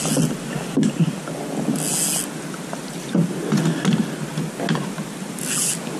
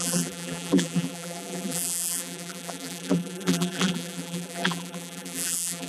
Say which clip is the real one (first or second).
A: first